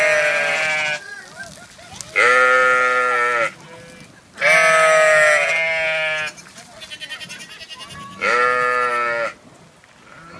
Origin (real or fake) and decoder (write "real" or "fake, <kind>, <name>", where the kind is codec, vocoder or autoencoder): real